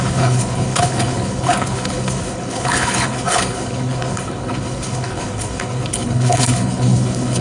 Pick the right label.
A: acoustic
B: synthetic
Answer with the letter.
B